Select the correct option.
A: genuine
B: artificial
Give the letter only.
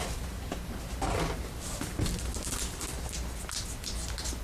A